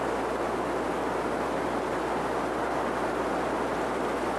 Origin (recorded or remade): recorded